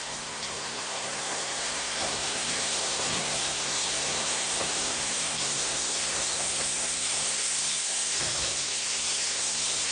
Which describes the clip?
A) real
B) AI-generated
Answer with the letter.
B